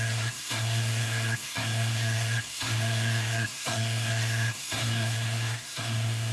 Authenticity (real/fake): fake